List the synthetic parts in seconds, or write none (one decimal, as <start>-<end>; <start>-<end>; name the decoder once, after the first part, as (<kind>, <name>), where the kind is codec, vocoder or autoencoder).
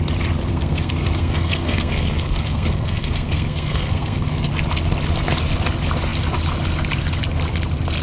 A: 0.5-4.5 (codec, SNAC)